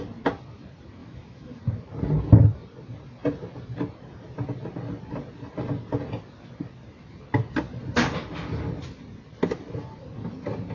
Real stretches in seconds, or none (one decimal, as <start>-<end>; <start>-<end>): 0.0-1.0; 1.6-10.7